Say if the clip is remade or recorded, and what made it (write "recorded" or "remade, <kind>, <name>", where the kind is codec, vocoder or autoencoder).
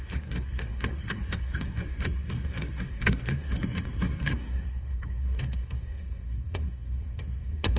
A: remade, codec, SNAC